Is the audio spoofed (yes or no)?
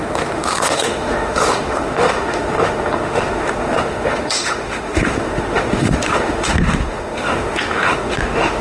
yes